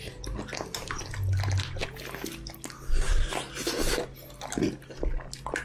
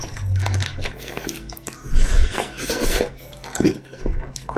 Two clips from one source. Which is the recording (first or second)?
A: first